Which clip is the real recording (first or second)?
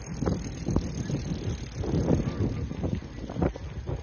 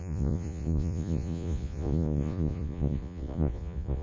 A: first